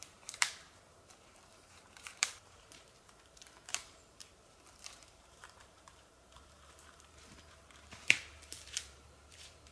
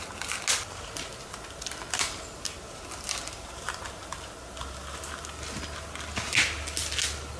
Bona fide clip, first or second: second